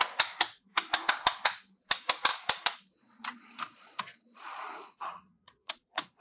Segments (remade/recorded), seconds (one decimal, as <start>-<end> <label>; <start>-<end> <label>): 0.0-2.3 recorded; 2.3-6.2 remade